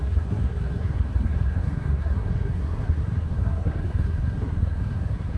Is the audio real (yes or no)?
no